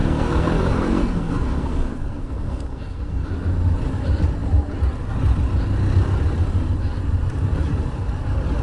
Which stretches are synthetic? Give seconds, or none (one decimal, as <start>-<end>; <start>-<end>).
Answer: 0.0-3.3